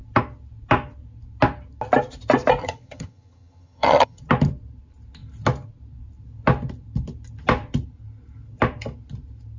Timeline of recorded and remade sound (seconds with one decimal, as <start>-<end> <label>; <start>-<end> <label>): 0.0-2.6 recorded; 2.6-4.2 remade; 4.2-9.6 recorded